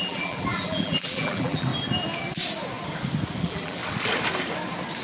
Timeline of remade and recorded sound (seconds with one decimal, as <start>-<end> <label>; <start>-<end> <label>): 0.0-1.7 remade; 1.7-3.4 recorded; 3.4-3.8 remade; 3.8-5.0 recorded